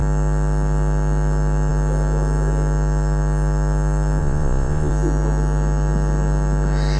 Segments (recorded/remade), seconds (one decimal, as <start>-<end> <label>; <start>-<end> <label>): 0.0-4.2 recorded; 4.2-4.9 remade; 4.9-7.0 recorded